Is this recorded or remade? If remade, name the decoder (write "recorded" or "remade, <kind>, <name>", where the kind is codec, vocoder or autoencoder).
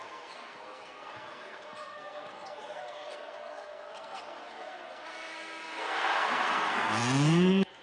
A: remade, codec, SNAC